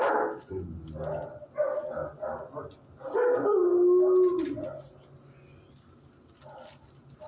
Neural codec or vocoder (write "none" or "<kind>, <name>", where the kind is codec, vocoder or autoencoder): none